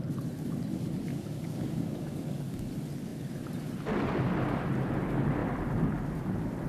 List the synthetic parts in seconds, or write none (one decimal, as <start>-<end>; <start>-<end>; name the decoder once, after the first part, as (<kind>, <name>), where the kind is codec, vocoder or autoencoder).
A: 1.1-2.7 (codec, DAC)